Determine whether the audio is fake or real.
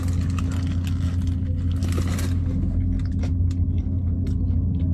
real